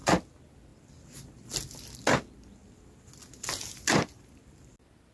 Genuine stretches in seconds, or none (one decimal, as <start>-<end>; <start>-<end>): 0.0-5.1

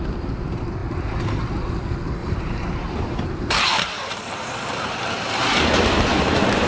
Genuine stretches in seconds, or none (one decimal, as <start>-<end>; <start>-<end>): 0.0-2.2; 6.2-6.7

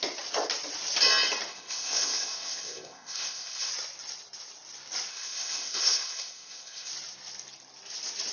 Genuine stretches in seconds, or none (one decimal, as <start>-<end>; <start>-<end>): 0.0-1.5; 3.7-5.1; 6.9-8.3

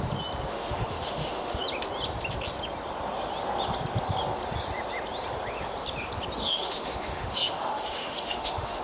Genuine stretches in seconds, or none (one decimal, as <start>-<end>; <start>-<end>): 0.0-0.5; 1.6-6.4

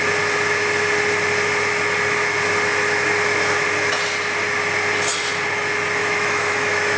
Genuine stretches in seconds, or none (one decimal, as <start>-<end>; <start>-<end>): 0.0-6.0

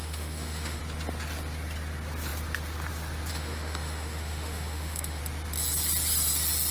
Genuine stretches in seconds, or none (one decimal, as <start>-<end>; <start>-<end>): 0.8-3.3; 5.2-6.7